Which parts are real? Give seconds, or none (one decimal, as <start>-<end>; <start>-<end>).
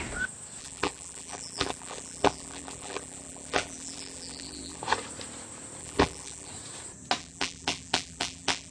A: 0.0-0.6; 4.8-5.8; 6.5-7.2